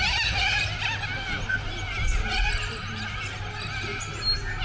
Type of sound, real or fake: real